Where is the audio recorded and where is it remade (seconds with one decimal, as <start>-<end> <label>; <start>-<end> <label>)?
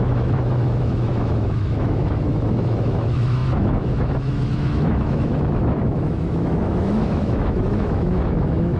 0.0-8.8 remade